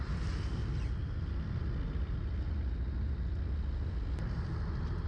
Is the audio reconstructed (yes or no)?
no